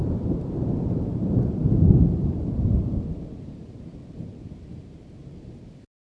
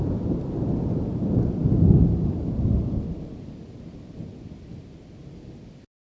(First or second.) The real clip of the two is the second